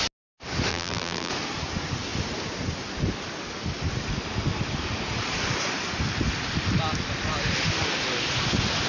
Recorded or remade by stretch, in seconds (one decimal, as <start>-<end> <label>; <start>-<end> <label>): 0.0-0.7 recorded; 0.7-1.3 remade; 1.3-8.9 recorded